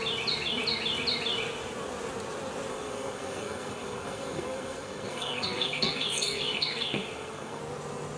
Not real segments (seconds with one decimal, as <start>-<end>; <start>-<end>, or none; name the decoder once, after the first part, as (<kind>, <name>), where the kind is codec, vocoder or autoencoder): 2.7-7.6 (codec, SNAC)